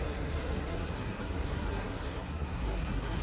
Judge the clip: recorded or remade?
remade